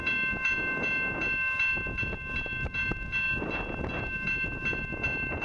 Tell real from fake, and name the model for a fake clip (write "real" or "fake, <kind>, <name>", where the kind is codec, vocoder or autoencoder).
real